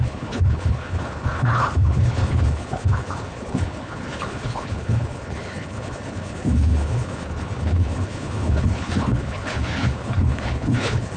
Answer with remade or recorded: remade